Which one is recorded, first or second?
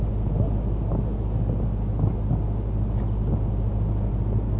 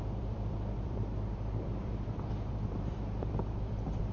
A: first